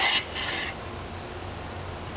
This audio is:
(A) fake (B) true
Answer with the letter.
B